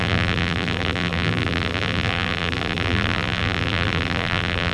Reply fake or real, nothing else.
fake